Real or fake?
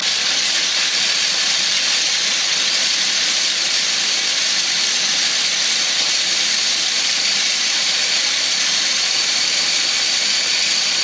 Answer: fake